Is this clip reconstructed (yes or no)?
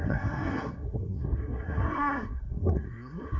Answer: yes